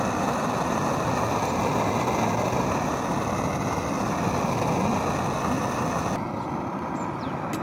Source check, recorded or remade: recorded